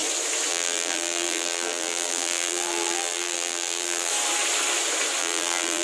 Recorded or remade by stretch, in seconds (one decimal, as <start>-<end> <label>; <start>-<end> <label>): 0.0-0.5 recorded; 0.5-4.1 remade; 4.1-5.2 recorded; 5.2-5.8 remade